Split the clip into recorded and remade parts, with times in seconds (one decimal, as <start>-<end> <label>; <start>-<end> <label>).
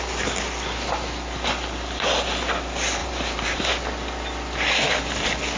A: 0.0-3.0 recorded; 3.0-3.7 remade; 3.7-5.6 recorded